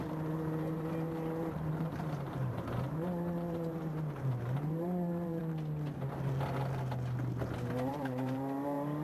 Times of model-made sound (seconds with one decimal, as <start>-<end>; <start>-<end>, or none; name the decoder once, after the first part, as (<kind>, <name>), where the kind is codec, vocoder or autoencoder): 0.0-5.4 (vocoder, BigVGAN v2); 7.9-9.0